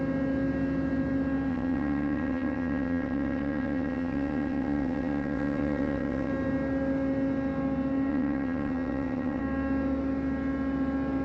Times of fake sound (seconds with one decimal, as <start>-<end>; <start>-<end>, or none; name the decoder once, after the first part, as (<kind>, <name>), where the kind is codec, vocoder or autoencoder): 1.5-6.3 (vocoder, WaveNeXt); 8.1-9.4